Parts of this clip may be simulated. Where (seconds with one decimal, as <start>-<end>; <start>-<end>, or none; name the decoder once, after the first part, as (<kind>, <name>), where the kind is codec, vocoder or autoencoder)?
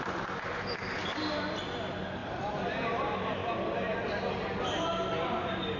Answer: none